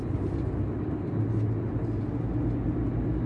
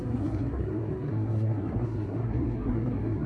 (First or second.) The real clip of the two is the first